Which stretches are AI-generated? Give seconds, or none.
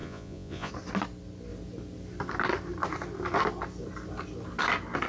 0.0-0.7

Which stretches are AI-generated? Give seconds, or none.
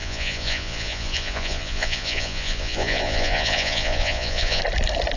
0.0-4.6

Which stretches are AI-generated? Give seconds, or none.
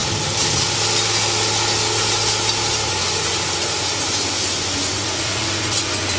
2.9-6.2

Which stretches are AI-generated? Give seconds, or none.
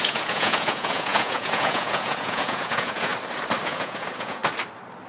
0.0-3.1; 3.7-4.4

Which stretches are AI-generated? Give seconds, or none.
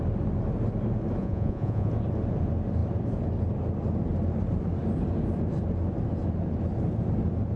1.2-1.9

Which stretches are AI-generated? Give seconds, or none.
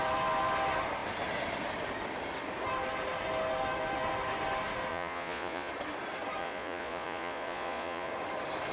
4.9-5.7; 6.4-8.1